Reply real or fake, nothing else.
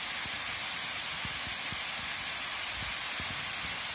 real